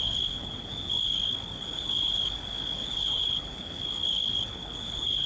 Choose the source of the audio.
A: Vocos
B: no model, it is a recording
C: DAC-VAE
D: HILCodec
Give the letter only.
D